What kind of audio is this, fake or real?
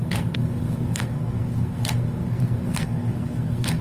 fake